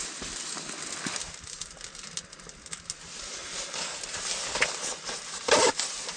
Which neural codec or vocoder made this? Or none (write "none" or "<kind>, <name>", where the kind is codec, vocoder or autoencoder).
none